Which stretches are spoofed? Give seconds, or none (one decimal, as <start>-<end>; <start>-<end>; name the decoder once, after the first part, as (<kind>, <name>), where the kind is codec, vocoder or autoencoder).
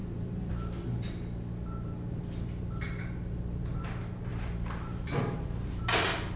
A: 4.3-6.0 (vocoder, BigVGAN v2)